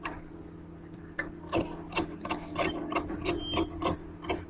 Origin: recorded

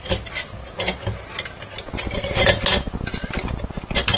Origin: recorded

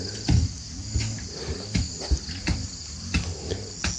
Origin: recorded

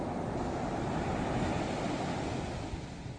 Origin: recorded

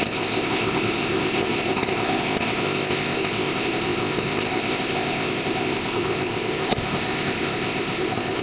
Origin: remade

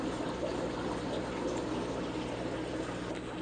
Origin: recorded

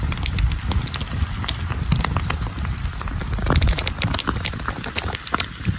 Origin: recorded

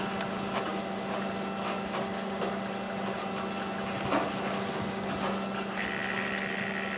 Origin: recorded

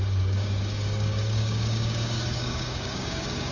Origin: remade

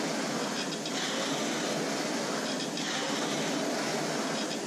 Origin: recorded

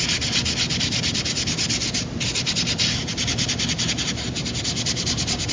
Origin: recorded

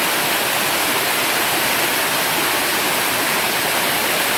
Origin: recorded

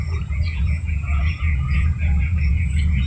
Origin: remade